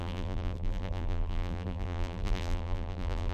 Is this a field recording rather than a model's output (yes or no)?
no